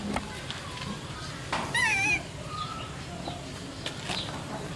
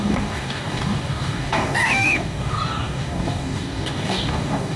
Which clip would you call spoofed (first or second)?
second